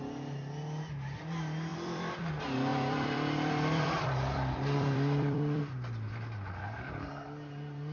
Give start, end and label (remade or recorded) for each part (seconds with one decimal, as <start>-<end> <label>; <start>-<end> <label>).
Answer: 0.0-1.7 recorded; 1.7-2.3 remade; 2.3-2.7 recorded; 2.7-5.6 remade; 5.6-7.9 recorded